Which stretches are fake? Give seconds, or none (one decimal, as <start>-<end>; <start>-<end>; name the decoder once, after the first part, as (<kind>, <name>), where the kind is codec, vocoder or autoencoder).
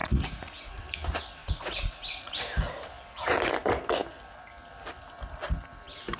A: 0.0-0.8 (vocoder, Vocos); 1.4-2.3